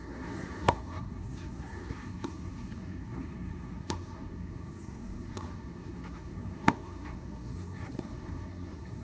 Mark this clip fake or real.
fake